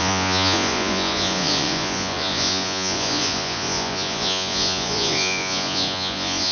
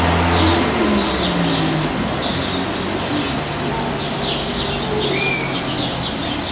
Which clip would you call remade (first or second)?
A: first